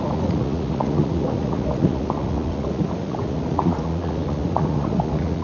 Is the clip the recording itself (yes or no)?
no